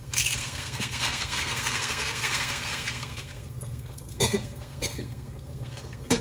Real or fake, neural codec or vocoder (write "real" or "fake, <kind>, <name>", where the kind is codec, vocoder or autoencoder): fake, codec, SNAC